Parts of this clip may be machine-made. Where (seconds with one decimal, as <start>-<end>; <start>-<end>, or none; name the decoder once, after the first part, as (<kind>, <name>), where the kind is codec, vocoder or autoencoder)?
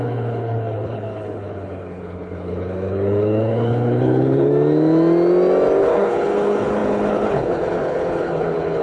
0.0-4.5 (codec, HILCodec); 5.8-8.8